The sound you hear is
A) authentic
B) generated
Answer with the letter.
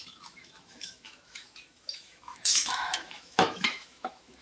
B